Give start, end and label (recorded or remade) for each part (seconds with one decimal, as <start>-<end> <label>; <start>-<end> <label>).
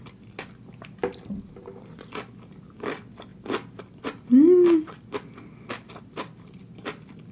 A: 0.0-7.3 recorded